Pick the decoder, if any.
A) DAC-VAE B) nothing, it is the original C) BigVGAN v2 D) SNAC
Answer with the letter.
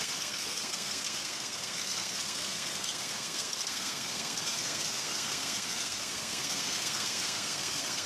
D